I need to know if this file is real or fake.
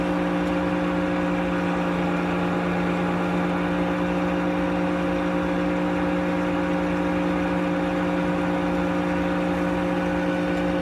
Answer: real